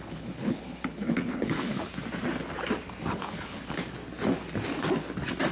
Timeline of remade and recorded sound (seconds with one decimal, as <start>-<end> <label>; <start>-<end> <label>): 0.0-1.9 remade; 1.9-3.1 recorded; 3.1-3.8 remade; 3.8-5.5 recorded

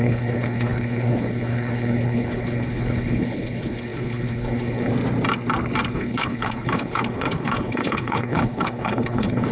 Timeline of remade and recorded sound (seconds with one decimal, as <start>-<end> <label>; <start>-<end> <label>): 0.0-4.9 remade; 4.9-5.9 recorded; 5.9-9.5 remade